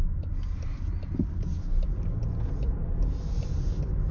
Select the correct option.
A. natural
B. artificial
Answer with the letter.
A